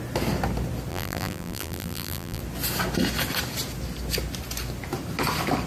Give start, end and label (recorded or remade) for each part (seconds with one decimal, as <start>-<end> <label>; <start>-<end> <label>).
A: 0.0-0.9 recorded; 0.9-2.4 remade; 2.4-5.7 recorded